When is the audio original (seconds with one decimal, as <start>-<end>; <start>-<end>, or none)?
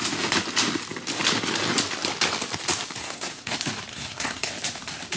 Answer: 0.0-3.0; 3.5-3.9; 4.5-5.2